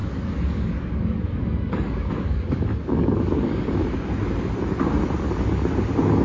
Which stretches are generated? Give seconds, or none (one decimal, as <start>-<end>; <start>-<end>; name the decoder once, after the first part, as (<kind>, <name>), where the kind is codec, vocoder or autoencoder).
0.0-3.7 (codec, DAC)